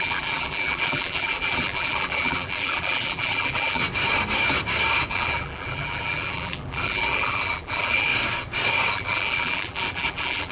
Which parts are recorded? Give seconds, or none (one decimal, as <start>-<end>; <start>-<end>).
3.8-5.1; 8.1-8.9